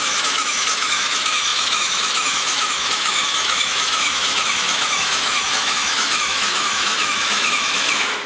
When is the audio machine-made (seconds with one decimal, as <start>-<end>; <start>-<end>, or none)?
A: 0.0-8.3